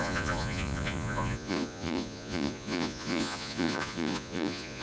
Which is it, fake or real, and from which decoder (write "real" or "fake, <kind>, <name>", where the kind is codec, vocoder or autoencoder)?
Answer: fake, vocoder, Vocos